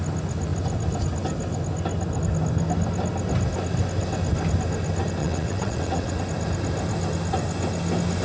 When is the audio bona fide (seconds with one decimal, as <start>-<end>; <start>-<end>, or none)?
0.0-5.2; 6.2-8.2